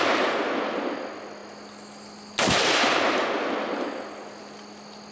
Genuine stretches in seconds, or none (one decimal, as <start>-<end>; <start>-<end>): 0.0-5.1